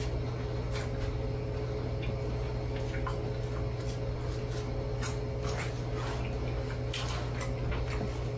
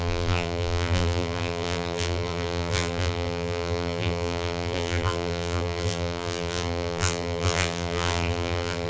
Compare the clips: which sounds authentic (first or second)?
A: first